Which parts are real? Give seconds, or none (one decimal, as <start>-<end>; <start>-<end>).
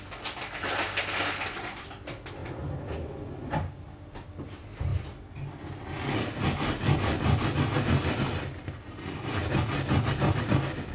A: 0.0-10.9